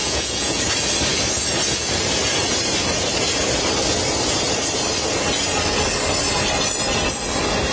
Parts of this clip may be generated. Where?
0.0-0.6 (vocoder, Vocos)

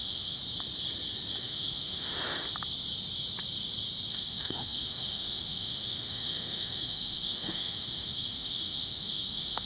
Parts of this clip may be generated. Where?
0.0-0.4 (autoencoder, DAC-VAE); 1.4-2.1; 4.1-9.7

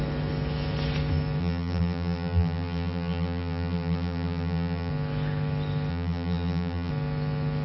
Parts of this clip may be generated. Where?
1.4-4.9 (vocoder, BigVGAN v2); 5.9-6.9

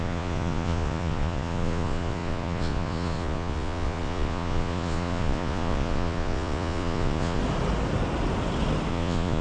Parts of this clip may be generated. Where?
0.0-7.4 (vocoder, Vocos); 8.9-9.4

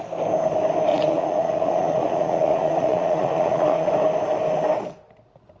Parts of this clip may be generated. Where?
0.9-3.9 (vocoder, Vocos)